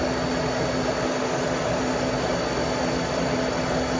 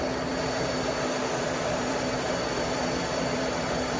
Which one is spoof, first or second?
second